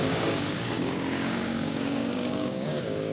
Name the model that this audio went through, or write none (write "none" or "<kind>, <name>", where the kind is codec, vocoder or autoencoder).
codec, DAC